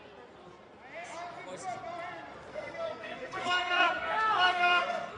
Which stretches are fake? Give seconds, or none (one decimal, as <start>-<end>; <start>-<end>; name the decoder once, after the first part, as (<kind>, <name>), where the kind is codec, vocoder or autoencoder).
2.5-5.2 (codec, SNAC)

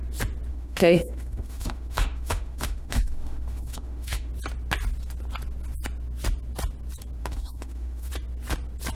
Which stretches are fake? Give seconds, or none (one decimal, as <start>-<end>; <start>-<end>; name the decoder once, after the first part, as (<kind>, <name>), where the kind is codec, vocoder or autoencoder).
0.5-4.3 (autoencoder, DAC-VAE); 7.2-8.1

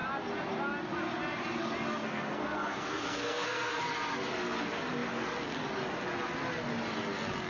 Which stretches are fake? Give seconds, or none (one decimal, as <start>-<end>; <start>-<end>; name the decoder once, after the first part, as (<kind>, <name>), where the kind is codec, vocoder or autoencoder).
2.0-3.8 (codec, SNAC)

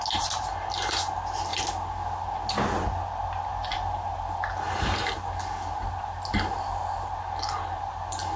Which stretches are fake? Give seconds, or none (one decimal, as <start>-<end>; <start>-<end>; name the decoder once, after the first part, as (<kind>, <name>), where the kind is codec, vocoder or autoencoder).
none

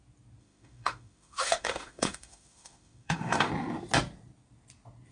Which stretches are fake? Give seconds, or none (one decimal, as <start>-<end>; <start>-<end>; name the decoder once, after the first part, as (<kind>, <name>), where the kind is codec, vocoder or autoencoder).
0.4-3.5 (autoencoder, DAC-VAE)

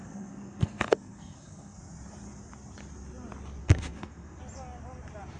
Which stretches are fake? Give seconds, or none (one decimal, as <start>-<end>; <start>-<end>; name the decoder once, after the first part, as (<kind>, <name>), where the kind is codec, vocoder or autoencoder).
0.0-1.8 (codec, SNAC); 3.6-4.4

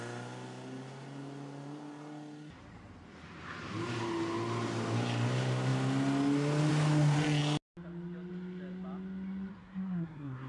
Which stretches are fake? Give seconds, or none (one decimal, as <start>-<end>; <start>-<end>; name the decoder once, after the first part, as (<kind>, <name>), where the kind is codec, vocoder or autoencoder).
9.5-10.5 (codec, SNAC)

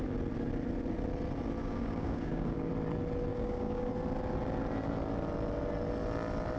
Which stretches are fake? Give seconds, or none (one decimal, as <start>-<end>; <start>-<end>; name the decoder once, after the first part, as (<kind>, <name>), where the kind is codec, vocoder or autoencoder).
1.6-2.7 (codec, DAC); 3.3-3.9